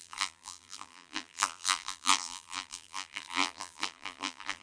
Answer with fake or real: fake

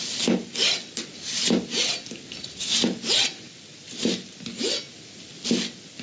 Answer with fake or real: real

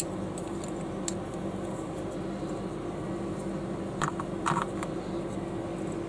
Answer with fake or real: real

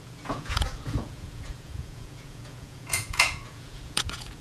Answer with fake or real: fake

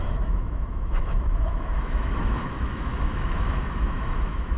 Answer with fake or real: fake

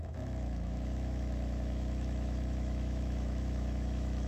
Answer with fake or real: fake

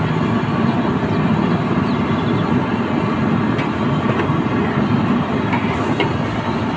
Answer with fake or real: real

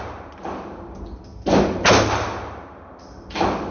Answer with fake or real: real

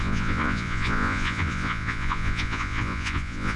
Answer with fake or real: fake